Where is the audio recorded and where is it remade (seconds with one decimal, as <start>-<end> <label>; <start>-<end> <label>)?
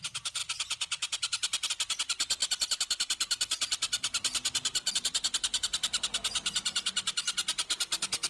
0.0-0.4 recorded; 0.4-1.7 remade; 1.7-2.4 recorded; 2.4-4.9 remade; 4.9-8.3 recorded